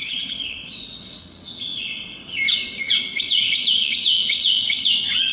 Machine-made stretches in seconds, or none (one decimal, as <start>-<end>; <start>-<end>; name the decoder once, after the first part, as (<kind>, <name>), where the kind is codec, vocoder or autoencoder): 0.0-5.3 (vocoder, WaveNeXt)